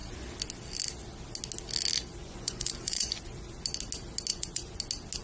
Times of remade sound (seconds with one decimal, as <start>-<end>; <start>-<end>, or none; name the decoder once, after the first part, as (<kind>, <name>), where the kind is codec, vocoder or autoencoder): 2.2-3.2 (vocoder, Vocos); 4.3-4.8